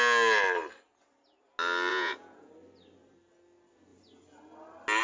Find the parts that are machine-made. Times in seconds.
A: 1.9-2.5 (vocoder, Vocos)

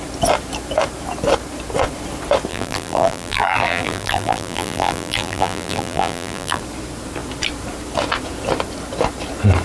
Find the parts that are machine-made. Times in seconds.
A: 2.5-6.6 (vocoder, BigVGAN v2)

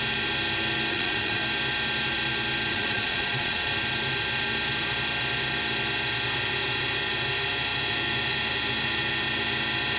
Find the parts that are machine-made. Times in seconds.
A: 0.9-1.4 (vocoder, Vocos); 2.7-3.7

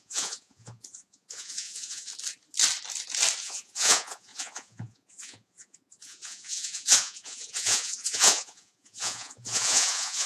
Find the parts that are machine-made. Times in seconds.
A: 0.0-2.1 (vocoder, Vocos); 3.4-10.3

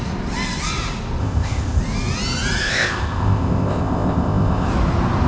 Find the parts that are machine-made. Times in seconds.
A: 1.2-1.8 (codec, ZipCodec); 2.6-4.7

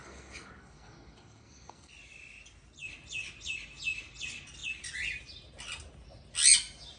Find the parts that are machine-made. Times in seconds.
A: 0.0-1.9 (codec, SNAC)